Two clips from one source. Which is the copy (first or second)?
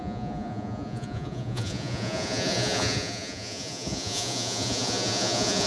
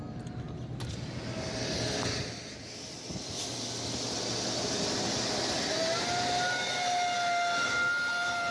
first